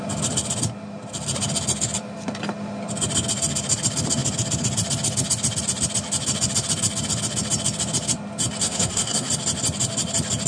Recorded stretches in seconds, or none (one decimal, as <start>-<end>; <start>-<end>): 0.0-8.6; 9.3-10.5